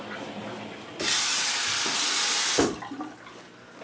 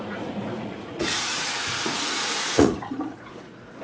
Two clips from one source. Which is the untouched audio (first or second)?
first